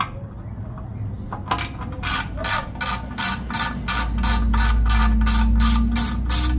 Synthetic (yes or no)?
no